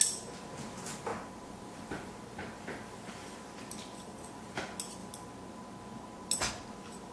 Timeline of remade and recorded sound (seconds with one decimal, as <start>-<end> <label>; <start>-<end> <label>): 0.0-1.1 recorded; 1.1-4.6 remade; 4.6-7.1 recorded